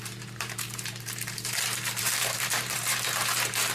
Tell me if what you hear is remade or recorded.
remade